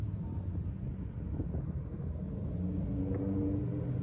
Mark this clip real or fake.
real